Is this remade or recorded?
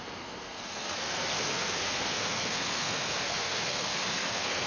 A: remade